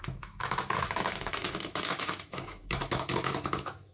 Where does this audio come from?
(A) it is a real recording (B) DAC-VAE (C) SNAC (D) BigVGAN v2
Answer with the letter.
B